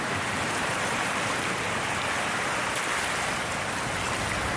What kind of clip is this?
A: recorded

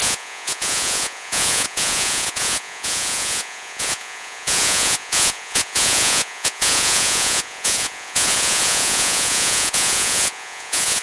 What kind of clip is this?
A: remade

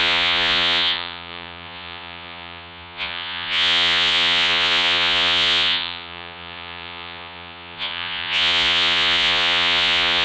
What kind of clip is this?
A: remade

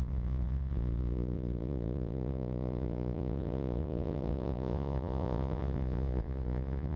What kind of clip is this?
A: remade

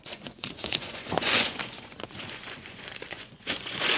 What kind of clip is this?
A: remade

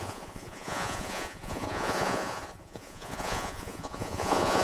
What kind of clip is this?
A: remade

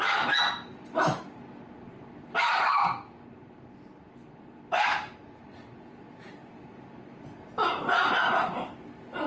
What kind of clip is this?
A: recorded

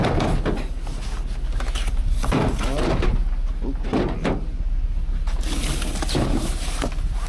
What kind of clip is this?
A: recorded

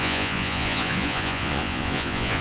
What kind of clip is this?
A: remade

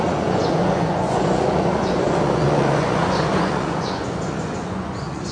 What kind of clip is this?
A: remade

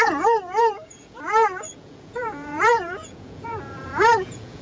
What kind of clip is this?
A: remade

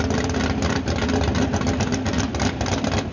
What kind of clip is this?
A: recorded